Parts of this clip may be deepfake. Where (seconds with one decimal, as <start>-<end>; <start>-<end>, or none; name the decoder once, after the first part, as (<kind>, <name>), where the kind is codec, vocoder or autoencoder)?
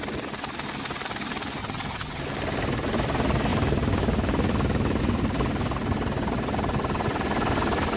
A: 1.6-2.2 (vocoder, HiFi-GAN)